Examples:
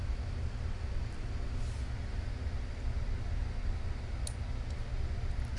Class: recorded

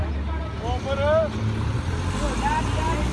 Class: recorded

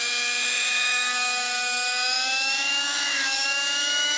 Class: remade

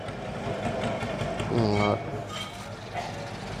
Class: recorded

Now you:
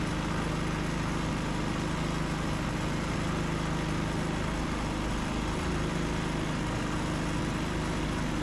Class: recorded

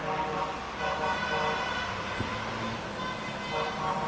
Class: recorded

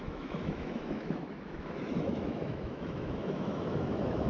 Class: remade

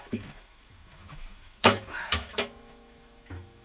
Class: remade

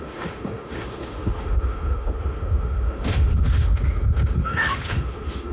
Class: remade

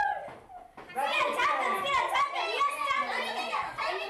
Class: recorded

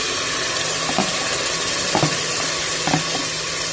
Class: recorded